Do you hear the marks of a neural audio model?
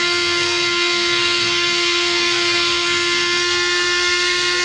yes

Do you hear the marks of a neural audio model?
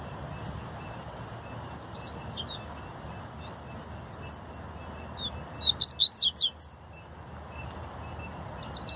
no